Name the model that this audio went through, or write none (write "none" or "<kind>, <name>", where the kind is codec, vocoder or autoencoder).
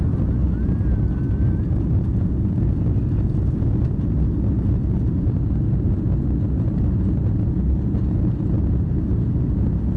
none